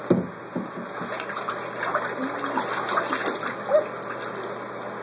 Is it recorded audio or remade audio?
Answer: recorded